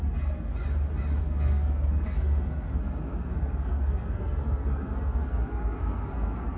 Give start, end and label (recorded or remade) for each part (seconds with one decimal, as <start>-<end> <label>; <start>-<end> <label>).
0.0-0.5 remade; 0.5-1.2 recorded; 1.2-6.6 remade

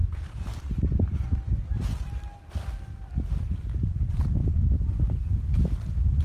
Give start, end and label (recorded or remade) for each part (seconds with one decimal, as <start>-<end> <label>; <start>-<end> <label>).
0.0-4.4 recorded; 4.4-5.1 remade; 5.1-6.2 recorded

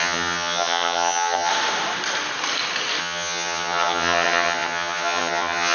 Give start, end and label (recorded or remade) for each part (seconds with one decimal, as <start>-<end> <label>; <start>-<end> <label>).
0.0-1.5 remade; 1.5-3.0 recorded; 3.0-5.7 remade

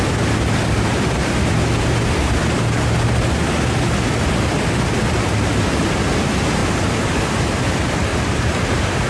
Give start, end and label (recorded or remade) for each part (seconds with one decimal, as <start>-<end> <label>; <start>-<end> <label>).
0.0-8.1 recorded; 8.1-9.1 remade

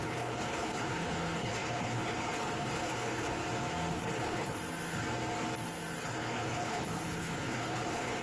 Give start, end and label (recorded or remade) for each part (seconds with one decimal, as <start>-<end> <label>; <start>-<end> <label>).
0.0-3.4 remade; 3.4-3.9 recorded; 3.9-4.6 remade; 4.6-6.0 recorded; 6.0-8.2 remade

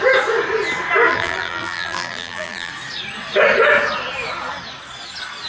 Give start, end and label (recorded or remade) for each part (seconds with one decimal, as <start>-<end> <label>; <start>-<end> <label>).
0.0-1.1 recorded; 1.1-2.7 remade; 2.7-5.5 recorded